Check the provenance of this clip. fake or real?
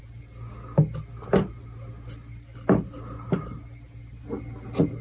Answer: real